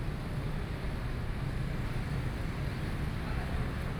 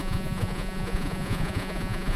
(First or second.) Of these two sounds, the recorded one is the first